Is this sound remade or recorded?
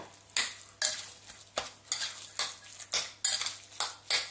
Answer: recorded